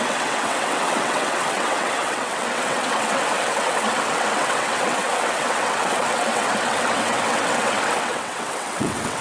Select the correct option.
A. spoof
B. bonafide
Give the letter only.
A